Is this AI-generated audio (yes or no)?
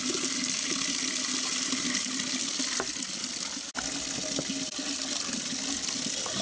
no